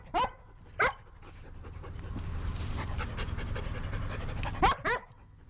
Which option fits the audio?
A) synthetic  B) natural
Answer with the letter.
B